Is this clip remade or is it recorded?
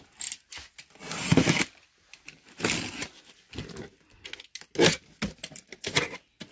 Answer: recorded